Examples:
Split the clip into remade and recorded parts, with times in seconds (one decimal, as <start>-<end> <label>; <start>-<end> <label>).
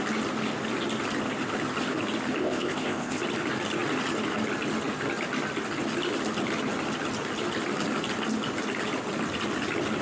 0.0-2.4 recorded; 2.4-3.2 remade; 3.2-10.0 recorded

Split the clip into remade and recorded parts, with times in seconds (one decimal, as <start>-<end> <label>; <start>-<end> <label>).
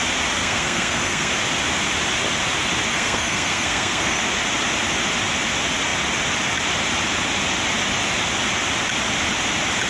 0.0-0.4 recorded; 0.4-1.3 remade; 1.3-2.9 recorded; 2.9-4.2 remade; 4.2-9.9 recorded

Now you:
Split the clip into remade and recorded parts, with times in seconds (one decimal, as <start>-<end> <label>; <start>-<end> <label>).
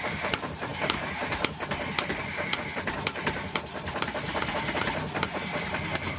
0.0-6.2 remade